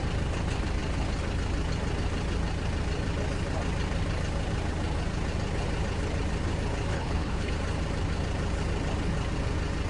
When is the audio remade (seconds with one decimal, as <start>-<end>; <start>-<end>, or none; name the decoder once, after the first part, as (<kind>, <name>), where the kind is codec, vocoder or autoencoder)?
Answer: 6.9-7.5 (codec, HILCodec)

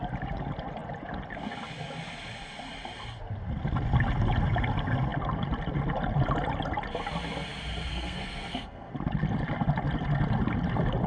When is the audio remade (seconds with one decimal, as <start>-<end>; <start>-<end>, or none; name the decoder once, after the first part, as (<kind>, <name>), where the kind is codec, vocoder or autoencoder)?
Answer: 7.9-8.9 (codec, SNAC)

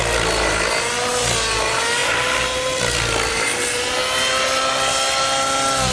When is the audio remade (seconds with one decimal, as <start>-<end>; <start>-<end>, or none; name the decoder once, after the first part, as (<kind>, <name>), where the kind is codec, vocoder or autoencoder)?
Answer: 2.0-4.0 (vocoder, BigVGAN v2)

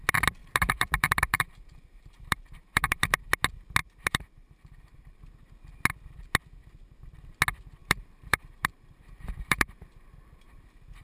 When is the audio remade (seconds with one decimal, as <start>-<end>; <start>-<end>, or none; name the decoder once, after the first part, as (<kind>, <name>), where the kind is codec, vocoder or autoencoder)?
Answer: 0.4-3.2 (vocoder, BigVGAN v2); 3.8-5.2; 7.8-10.6